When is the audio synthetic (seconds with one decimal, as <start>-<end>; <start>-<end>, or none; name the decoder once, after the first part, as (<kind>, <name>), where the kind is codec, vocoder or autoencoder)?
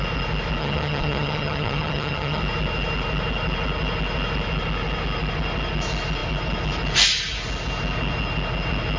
0.6-2.4 (vocoder, HiFi-GAN)